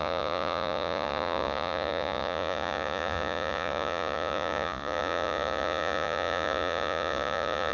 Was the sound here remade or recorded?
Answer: remade